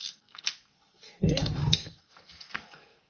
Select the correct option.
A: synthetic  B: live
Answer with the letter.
A